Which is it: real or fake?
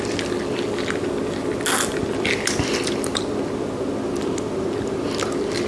real